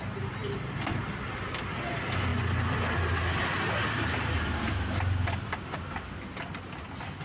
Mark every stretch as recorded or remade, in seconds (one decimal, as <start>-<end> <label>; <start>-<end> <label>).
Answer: 0.0-7.2 recorded